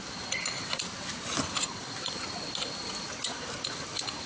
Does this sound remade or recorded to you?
recorded